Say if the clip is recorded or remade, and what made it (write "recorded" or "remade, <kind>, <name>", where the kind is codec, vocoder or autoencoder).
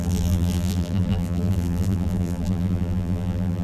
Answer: remade, vocoder, BigVGAN v2